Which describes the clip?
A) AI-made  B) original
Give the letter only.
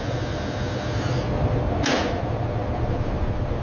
B